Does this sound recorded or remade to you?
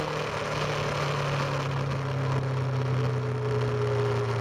recorded